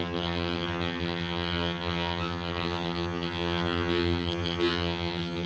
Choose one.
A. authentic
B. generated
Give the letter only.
B